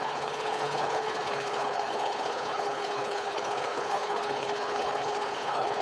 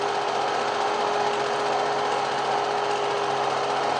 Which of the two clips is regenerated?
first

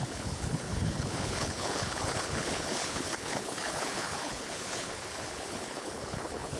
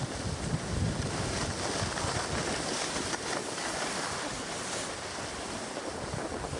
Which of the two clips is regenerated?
first